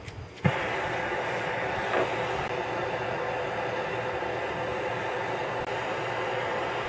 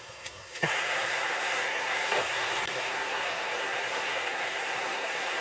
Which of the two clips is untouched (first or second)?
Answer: first